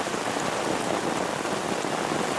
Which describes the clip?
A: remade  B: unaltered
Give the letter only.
B